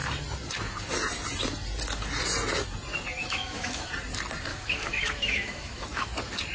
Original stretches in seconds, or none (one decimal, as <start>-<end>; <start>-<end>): 0.0-3.2; 3.9-4.5; 6.1-6.5